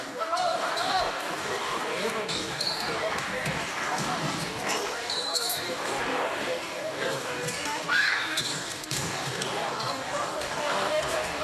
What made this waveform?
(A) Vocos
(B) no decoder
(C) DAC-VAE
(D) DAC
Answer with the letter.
D